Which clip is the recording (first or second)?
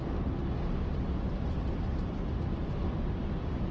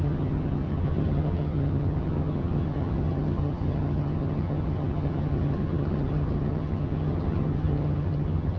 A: first